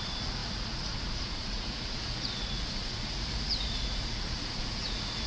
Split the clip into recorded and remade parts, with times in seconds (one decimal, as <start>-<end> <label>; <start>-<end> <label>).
0.0-5.3 remade